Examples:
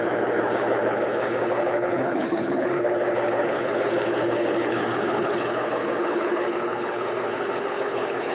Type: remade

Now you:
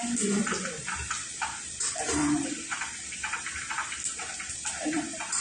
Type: recorded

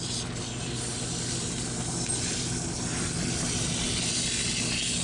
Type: recorded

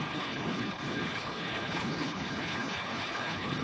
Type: remade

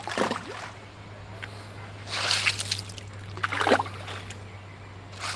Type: recorded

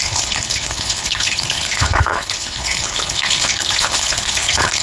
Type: remade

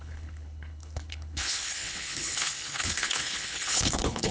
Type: remade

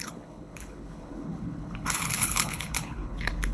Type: remade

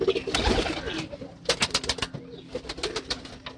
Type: recorded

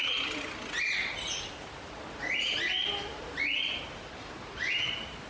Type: recorded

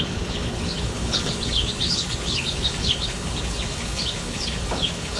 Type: remade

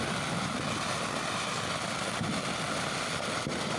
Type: recorded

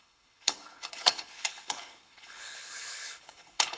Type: remade